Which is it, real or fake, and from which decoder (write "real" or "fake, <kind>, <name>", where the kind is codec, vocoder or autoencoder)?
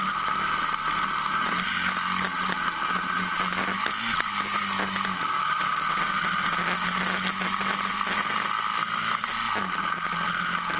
real